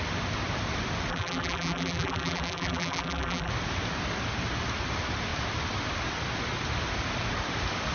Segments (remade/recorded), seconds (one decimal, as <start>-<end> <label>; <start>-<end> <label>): 0.0-1.1 recorded; 1.1-3.5 remade; 3.5-7.9 recorded